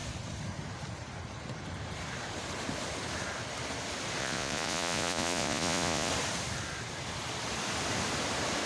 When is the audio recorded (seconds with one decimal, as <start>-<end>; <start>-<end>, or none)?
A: 0.0-4.2; 6.1-8.7